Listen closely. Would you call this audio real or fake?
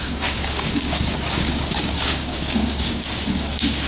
fake